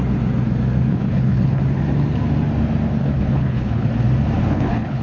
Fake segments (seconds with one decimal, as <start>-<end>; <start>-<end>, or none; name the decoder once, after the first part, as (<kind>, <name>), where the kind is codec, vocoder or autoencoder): 0.9-1.6 (codec, HILCodec); 3.0-3.9; 4.4-5.0